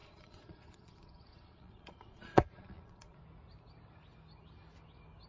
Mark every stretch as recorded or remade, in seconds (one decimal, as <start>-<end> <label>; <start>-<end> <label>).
0.0-3.2 remade; 3.2-5.3 recorded